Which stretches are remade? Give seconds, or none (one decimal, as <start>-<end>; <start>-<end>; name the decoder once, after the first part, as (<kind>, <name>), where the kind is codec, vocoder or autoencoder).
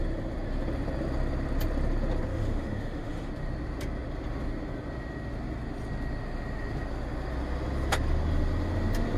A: 2.3-3.3 (autoencoder, DAC-VAE)